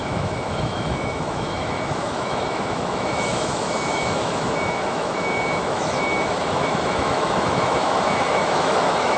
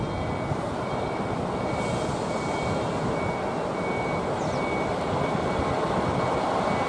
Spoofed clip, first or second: first